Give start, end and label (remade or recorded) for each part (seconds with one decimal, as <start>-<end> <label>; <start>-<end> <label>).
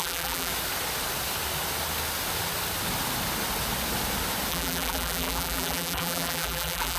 0.0-0.5 remade; 0.5-4.5 recorded; 4.5-7.0 remade